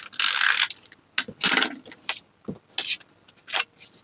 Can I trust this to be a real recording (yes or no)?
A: yes